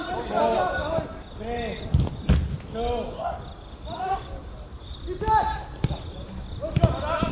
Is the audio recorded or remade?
recorded